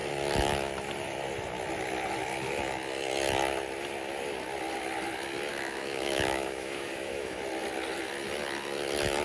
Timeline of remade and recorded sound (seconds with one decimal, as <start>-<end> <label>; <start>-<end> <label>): 0.0-5.5 recorded; 5.5-7.4 remade; 7.4-9.2 recorded